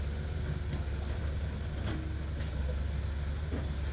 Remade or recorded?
recorded